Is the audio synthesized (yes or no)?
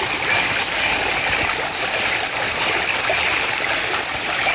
no